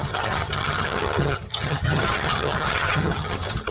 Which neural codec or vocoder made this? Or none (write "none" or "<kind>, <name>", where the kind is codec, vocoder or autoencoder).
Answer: vocoder, HiFi-GAN